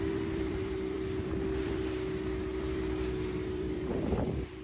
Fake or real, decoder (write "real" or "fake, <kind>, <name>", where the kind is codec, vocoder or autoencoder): fake, vocoder, BigVGAN v2